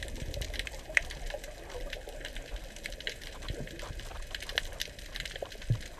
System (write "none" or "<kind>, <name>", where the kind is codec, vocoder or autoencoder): none